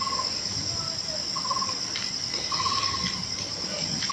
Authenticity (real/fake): real